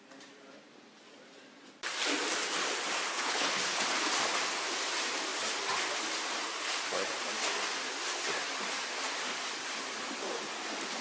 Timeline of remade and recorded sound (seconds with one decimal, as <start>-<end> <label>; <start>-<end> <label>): 0.0-3.1 recorded; 3.1-3.6 remade; 3.6-11.0 recorded